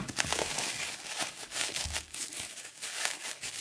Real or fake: fake